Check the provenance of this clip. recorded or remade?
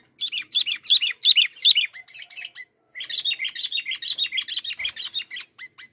recorded